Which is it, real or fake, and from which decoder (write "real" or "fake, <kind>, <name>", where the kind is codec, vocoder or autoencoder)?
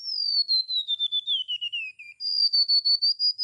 real